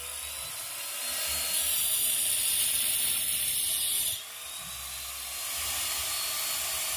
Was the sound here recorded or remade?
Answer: recorded